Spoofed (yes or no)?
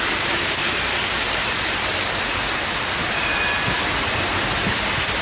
no